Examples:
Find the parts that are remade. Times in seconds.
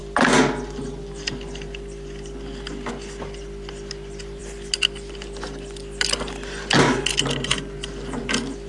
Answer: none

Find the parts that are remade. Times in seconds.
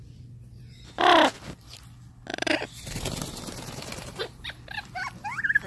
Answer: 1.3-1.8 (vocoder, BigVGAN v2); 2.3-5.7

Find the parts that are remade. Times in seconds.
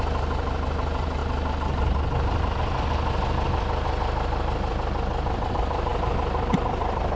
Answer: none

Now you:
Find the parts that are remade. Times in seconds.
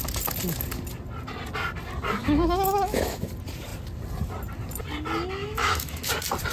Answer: 2.2-3.3 (autoencoder, DAC-VAE); 5.4-6.1